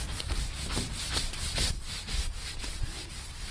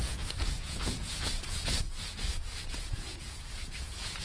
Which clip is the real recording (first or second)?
first